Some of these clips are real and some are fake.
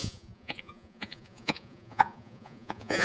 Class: fake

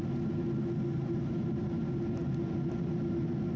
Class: real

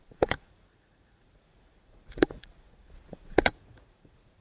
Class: fake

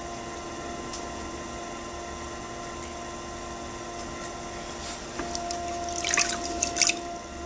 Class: real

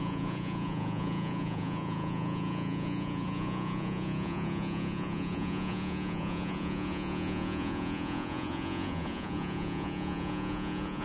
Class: fake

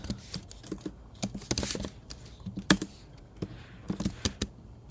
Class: real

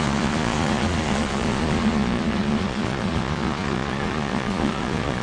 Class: fake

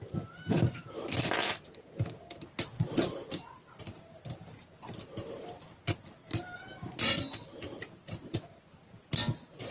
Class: real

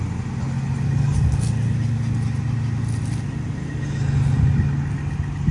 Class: real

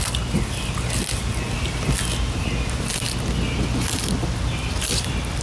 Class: real